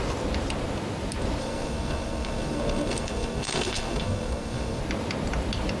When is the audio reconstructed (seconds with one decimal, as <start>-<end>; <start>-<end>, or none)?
1.4-4.8